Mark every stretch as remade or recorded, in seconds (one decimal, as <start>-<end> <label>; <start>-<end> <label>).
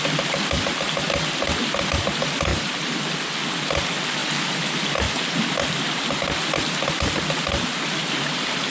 0.0-8.7 recorded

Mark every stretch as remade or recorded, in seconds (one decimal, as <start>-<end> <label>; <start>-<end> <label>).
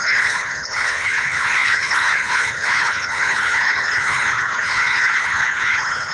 0.0-6.1 remade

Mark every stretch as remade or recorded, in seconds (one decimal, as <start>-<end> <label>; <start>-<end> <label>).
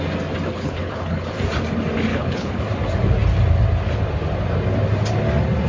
0.0-0.5 recorded; 0.5-1.3 remade; 1.3-2.1 recorded; 2.1-2.6 remade; 2.6-5.7 recorded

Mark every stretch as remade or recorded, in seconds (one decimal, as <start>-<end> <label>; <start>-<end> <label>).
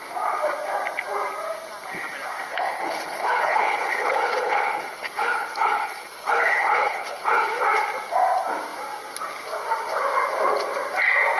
0.0-2.5 recorded; 2.5-7.6 remade; 7.6-11.4 recorded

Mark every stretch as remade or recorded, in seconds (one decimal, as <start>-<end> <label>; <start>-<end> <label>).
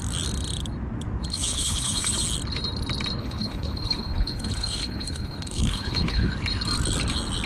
0.0-1.3 recorded; 1.3-2.1 remade; 2.1-3.2 recorded; 3.2-6.3 remade; 6.3-7.5 recorded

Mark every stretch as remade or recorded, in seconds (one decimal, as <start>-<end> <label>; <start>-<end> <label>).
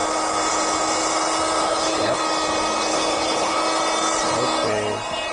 0.0-1.6 recorded; 1.6-2.2 remade; 2.2-2.9 recorded; 2.9-3.6 remade; 3.6-5.3 recorded